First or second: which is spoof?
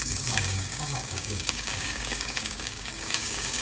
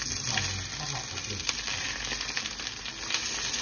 first